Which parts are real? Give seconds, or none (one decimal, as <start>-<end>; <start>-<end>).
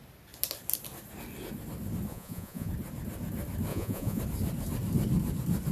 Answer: 0.0-2.1; 2.7-3.7; 4.2-5.7